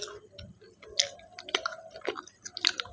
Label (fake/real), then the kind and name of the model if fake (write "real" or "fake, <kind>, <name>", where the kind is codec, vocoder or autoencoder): real